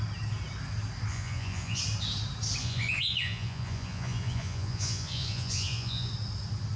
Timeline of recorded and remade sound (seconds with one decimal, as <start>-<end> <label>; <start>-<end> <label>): 0.0-1.1 recorded; 1.1-1.8 remade; 1.8-2.6 recorded; 2.6-6.1 remade; 6.1-6.8 recorded